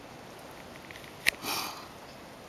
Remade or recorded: recorded